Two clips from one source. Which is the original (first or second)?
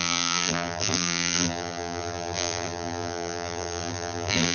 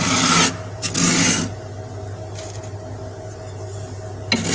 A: second